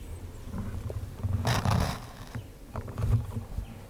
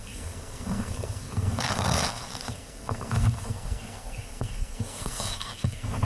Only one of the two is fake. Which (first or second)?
second